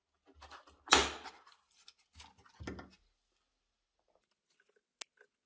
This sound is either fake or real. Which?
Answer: real